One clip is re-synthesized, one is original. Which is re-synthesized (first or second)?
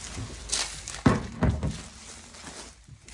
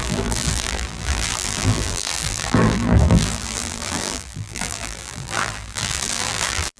second